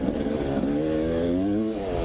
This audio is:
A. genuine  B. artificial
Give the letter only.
B